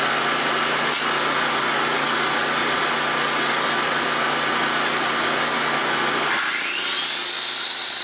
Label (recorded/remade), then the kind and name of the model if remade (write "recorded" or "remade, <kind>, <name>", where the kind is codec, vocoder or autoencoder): recorded